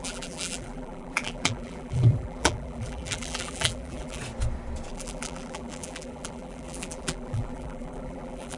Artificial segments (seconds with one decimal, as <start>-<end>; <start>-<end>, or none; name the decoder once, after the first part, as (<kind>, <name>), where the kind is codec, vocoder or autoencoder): 0.0-4.2 (vocoder, BigVGAN v2); 4.9-8.6